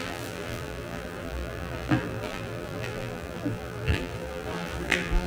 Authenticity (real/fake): fake